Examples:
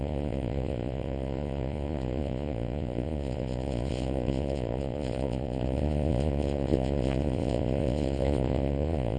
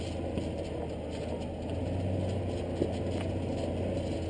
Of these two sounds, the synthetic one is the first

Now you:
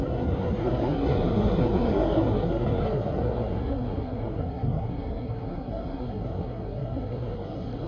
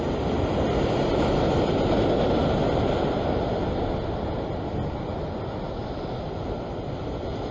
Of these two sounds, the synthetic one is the first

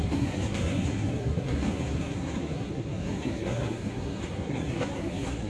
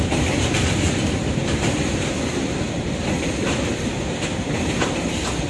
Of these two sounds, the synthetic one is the first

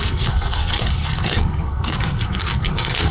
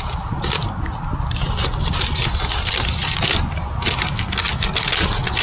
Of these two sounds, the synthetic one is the first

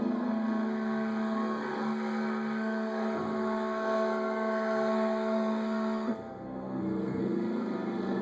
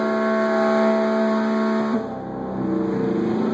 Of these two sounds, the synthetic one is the first